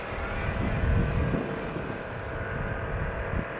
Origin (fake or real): real